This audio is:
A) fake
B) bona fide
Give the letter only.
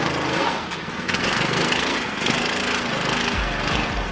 A